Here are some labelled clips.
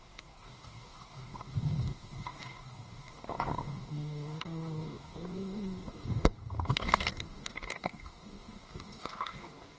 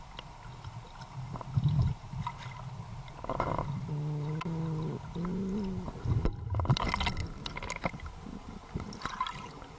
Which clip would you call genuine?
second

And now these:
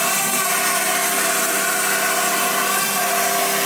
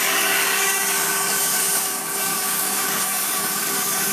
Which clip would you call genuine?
first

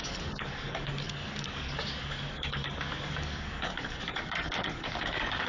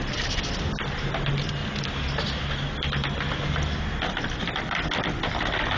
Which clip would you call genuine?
second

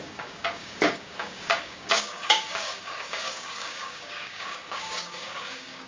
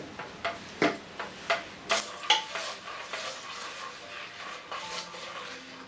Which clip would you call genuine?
second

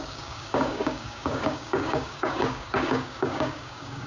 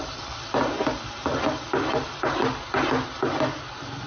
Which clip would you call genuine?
second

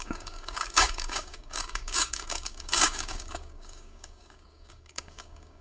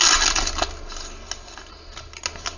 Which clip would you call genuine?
second